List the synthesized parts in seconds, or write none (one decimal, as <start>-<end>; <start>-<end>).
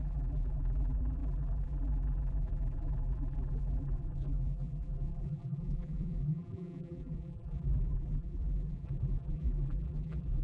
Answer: 0.0-10.4